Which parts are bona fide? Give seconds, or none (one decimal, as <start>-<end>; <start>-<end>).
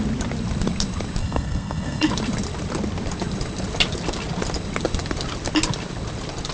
0.0-1.2; 2.1-6.5